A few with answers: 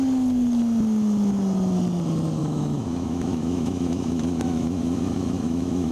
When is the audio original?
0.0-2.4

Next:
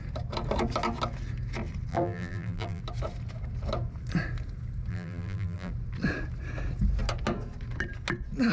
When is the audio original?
0.0-1.9; 2.8-4.9; 5.7-8.5

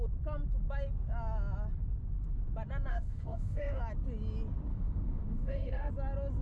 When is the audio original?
0.0-2.9; 3.8-4.7; 5.9-6.4

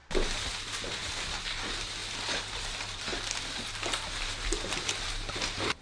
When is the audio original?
0.0-5.8

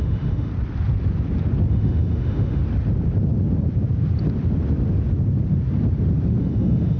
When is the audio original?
0.5-1.7; 2.6-6.4